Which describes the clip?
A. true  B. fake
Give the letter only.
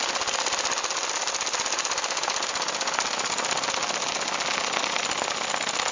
A